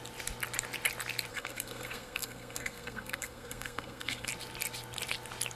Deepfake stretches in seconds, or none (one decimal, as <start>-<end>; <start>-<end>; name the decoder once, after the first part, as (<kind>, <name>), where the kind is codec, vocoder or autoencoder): 1.3-4.3 (codec, SNAC)